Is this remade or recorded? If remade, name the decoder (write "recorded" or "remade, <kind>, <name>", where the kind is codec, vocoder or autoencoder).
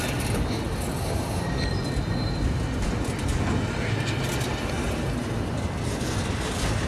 recorded